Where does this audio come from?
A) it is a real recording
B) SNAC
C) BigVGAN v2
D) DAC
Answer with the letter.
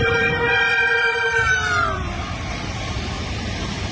C